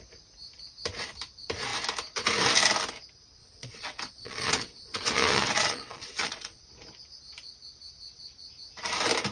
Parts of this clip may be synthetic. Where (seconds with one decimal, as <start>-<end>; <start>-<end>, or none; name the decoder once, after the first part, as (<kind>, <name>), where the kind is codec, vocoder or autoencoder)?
3.4-6.6 (vocoder, WaveNeXt)